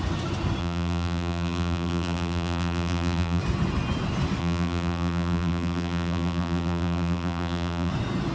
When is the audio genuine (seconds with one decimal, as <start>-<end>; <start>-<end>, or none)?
0.0-0.6; 3.4-4.4; 7.9-8.3